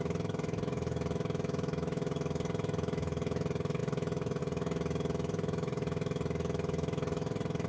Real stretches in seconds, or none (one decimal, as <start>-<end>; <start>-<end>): none